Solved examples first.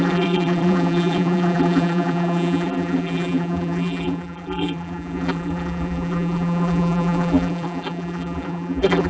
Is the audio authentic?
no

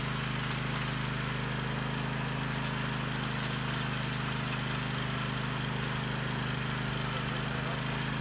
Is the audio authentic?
yes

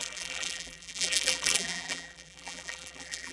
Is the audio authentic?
no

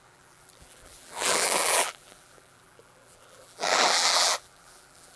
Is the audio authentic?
no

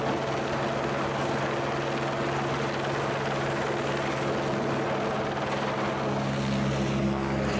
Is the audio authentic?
yes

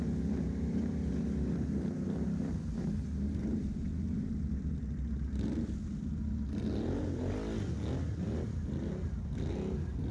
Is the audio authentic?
yes